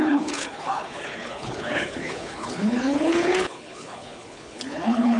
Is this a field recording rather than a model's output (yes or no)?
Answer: no